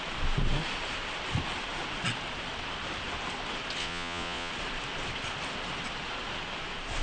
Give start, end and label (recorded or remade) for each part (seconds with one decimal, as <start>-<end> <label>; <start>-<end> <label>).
0.0-3.8 recorded; 3.8-4.5 remade; 4.5-7.0 recorded